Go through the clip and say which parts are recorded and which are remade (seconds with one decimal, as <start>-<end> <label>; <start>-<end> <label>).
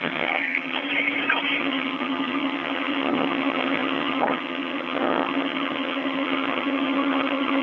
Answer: 0.0-0.8 remade; 0.8-1.6 recorded; 1.6-7.6 remade